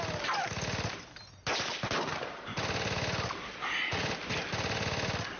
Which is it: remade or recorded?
recorded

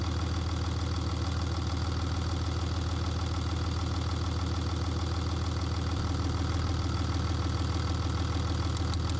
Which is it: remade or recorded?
recorded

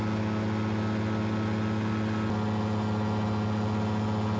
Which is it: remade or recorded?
recorded